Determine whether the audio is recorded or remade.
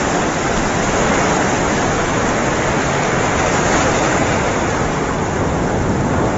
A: recorded